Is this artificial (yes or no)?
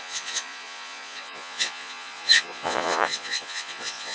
yes